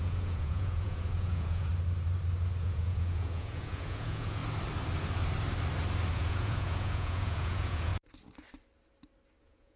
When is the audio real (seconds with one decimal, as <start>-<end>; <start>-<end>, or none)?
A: 1.7-2.6; 4.4-6.1; 7.9-9.4